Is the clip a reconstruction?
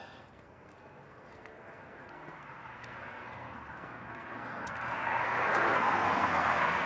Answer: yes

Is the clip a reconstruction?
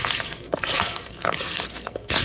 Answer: yes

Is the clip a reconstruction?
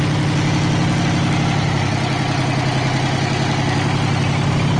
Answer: no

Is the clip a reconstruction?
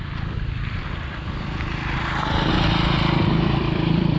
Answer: yes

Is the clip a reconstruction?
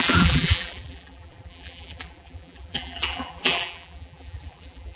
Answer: yes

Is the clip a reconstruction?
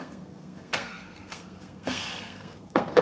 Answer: yes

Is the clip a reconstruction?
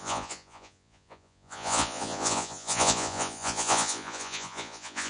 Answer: yes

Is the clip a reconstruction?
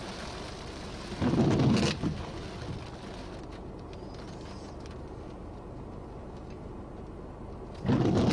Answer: no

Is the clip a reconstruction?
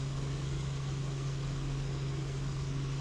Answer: yes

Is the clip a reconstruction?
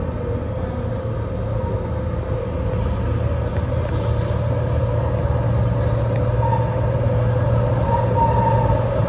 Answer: no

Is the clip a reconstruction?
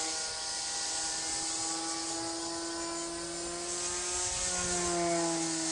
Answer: no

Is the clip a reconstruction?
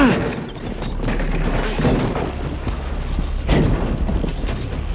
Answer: no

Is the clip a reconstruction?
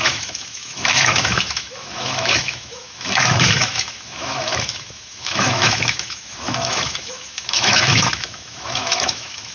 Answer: yes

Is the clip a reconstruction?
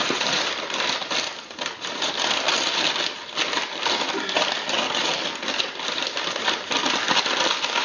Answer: no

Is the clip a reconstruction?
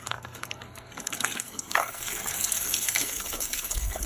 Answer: yes